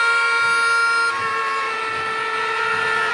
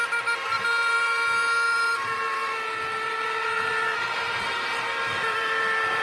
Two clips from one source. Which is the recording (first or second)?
first